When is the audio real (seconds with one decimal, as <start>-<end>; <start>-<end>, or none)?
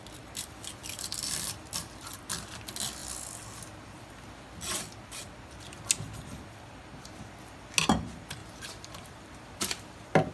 0.0-0.8; 2.6-8.4